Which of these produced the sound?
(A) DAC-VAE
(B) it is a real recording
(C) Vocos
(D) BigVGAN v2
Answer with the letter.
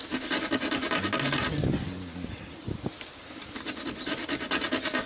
B